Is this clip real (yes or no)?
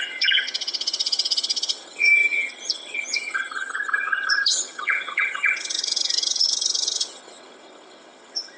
no